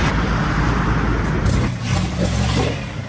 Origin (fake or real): fake